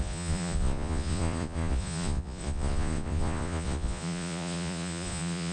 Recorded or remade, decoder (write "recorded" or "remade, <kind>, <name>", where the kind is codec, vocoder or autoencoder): remade, vocoder, Vocos